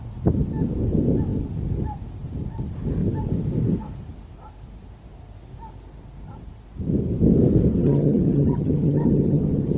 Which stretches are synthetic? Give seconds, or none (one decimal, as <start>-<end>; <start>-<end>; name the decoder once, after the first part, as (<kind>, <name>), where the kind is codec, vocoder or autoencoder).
7.7-9.8 (vocoder, HiFi-GAN)